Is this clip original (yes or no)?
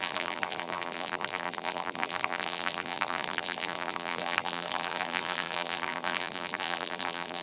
no